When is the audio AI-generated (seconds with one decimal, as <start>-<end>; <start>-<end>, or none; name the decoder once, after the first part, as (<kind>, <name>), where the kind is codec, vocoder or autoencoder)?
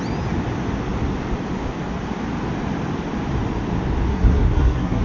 4.1-5.0 (codec, SNAC)